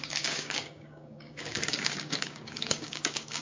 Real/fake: fake